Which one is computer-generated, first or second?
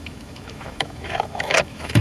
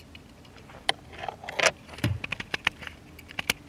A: first